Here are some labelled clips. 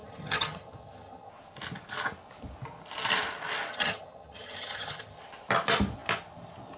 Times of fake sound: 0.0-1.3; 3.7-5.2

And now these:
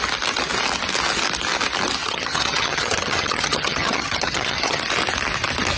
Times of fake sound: 2.0-4.8